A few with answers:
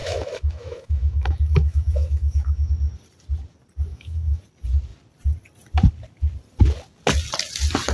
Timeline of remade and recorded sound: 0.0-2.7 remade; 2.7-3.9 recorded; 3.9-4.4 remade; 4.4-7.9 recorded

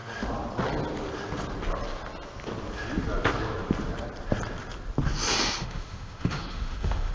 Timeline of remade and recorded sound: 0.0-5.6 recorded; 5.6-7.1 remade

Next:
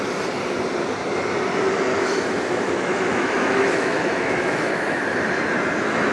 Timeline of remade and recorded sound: 0.0-1.9 recorded; 1.9-5.0 remade; 5.0-6.1 recorded

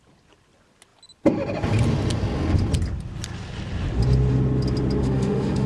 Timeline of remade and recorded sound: 0.0-5.0 recorded; 5.0-5.7 remade

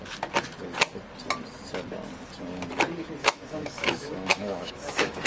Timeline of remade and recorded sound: 0.0-3.2 recorded; 3.2-5.3 remade

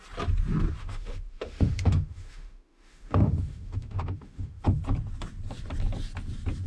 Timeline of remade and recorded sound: 0.0-0.8 recorded; 0.8-4.8 remade; 4.8-6.7 recorded

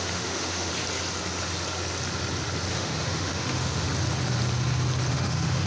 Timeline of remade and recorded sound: 0.0-0.7 remade; 0.7-2.7 recorded; 2.7-3.9 remade; 3.9-5.1 recorded; 5.1-5.7 remade

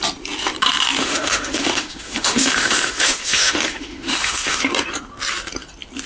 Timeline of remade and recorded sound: 0.0-1.0 recorded; 1.0-4.7 remade; 4.7-6.1 recorded